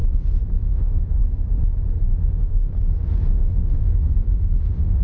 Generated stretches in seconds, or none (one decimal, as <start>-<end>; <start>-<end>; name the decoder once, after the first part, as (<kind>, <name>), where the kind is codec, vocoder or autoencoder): 0.6-1.2 (autoencoder, DAC-VAE); 2.1-2.7; 3.3-3.9; 4.6-5.0